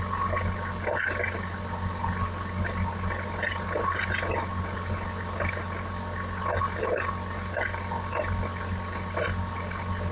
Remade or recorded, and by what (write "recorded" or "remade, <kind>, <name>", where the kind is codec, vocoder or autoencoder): recorded